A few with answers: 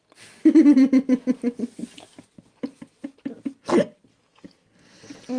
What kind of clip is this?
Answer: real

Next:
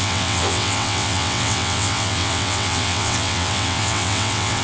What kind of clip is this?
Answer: fake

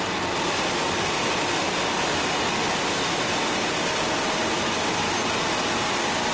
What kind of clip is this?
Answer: real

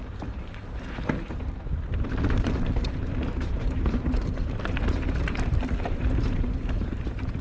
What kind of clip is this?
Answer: fake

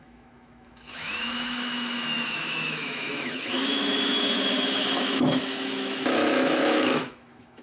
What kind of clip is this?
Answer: fake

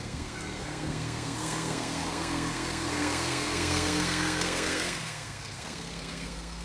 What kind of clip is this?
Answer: fake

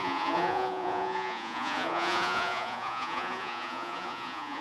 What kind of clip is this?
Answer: fake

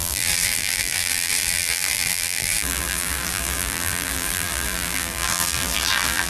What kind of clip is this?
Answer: fake